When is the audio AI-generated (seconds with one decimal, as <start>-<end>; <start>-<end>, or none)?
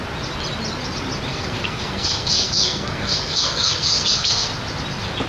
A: 1.3-4.5